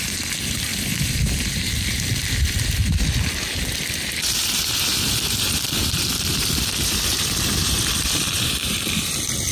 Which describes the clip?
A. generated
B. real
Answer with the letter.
A